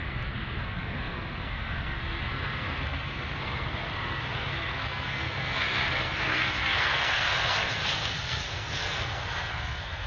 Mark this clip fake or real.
fake